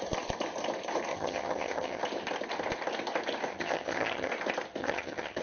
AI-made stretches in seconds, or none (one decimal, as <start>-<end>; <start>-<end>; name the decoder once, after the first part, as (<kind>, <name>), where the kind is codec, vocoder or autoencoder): 1.1-2.0 (vocoder, HiFi-GAN); 3.5-4.3; 4.8-5.4